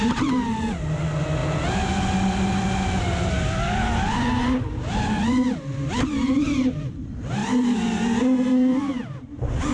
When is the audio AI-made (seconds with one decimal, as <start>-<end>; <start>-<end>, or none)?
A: none